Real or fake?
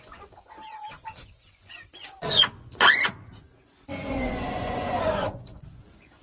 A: fake